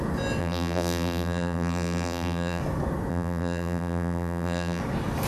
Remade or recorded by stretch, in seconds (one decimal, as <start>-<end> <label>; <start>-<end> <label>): 0.0-0.4 recorded; 0.4-2.6 remade; 2.6-3.1 recorded; 3.1-4.8 remade; 4.8-5.3 recorded